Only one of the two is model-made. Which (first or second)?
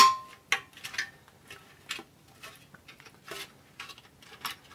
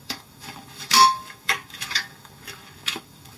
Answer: second